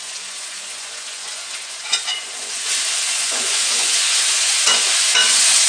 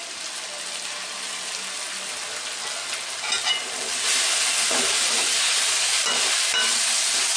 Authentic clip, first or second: second